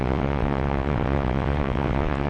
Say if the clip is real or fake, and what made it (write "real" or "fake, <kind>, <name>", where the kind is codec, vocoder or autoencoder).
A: fake, vocoder, WaveNeXt